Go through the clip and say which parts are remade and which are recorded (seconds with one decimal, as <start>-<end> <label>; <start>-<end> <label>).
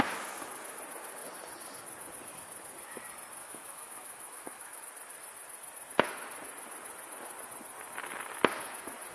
0.0-3.4 recorded; 3.4-4.8 remade; 4.8-9.1 recorded